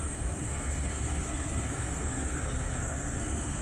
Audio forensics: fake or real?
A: fake